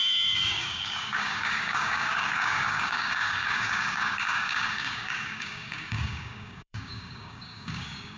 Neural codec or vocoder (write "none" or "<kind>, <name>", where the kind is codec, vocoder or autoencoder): codec, DAC